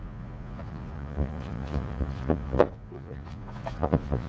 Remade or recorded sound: remade